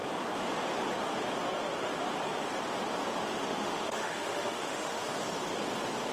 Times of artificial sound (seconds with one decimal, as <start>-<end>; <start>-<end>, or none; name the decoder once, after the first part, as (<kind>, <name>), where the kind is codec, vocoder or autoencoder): 3.2-5.0 (autoencoder, DAC-VAE)